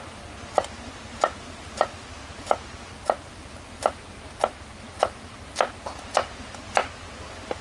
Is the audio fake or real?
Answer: real